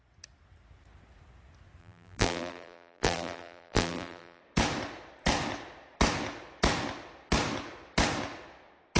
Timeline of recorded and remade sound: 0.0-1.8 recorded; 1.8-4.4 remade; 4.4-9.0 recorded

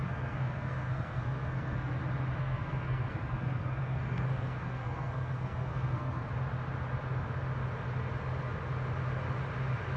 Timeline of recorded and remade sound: 0.0-2.0 remade; 2.0-2.4 recorded; 2.4-6.2 remade; 6.2-10.0 recorded